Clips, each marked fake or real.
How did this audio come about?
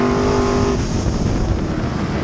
real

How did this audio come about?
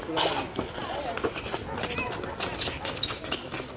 real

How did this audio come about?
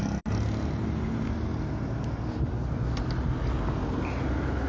real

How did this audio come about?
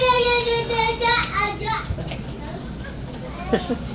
real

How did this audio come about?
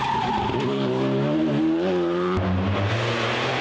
real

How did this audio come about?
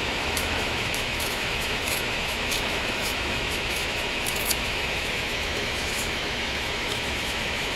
fake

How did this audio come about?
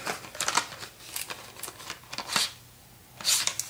real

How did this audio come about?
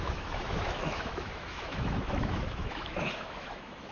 fake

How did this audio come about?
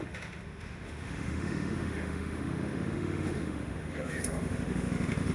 fake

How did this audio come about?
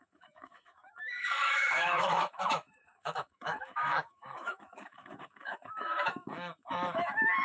fake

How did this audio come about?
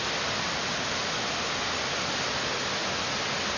real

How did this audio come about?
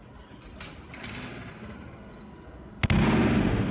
real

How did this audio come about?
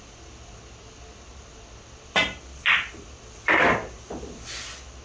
real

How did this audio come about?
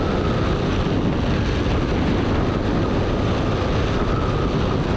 real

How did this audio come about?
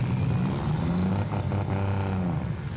real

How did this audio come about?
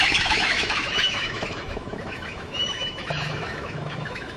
fake